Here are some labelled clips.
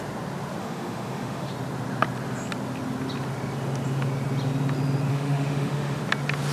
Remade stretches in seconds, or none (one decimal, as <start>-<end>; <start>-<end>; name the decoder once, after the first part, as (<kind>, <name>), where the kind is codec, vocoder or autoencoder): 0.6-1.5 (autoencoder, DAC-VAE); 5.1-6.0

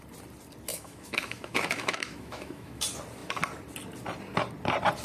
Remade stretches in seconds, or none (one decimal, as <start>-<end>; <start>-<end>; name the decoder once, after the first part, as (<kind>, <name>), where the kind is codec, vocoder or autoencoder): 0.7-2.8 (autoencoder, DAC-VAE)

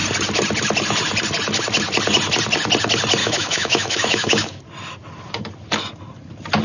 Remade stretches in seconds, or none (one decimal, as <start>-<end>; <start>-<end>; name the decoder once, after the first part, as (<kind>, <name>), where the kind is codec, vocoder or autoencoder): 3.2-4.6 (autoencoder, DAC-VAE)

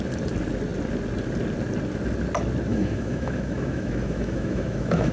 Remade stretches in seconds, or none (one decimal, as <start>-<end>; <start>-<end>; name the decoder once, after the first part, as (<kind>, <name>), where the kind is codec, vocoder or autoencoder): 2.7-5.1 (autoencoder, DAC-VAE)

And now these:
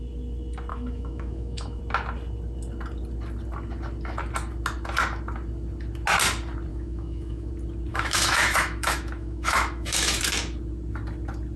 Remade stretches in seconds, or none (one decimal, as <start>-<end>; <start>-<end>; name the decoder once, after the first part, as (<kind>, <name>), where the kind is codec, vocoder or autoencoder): 0.7-1.8 (autoencoder, DAC-VAE); 6.7-7.5; 7.9-10.2